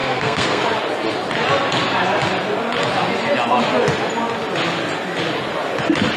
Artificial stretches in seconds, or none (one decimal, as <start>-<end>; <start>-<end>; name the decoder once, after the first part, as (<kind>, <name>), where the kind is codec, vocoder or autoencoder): 0.0-0.6 (codec, SNAC)